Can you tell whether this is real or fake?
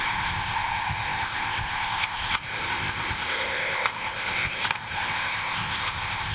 fake